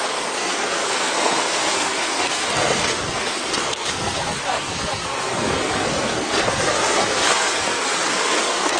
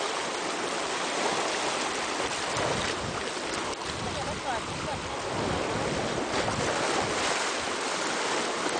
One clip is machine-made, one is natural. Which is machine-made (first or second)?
first